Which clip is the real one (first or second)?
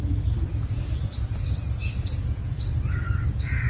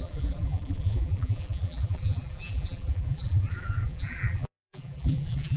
first